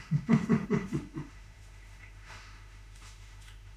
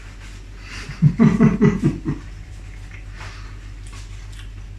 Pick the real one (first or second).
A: second